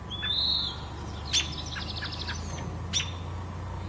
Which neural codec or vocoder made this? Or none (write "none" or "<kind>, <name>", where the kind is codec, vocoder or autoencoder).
none